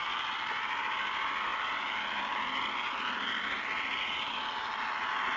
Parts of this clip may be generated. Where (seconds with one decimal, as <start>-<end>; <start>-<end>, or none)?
none